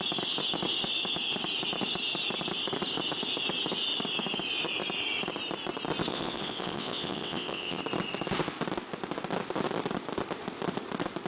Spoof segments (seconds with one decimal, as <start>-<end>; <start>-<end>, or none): 6.1-7.8